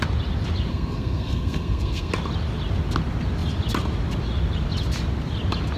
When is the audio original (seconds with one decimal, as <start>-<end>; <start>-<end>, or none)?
0.0-0.7; 2.1-5.8